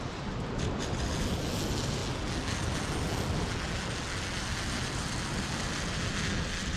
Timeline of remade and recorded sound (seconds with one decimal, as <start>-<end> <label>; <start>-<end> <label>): 0.0-6.8 recorded